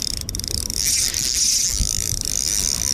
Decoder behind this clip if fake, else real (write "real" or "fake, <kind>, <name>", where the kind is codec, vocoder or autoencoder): real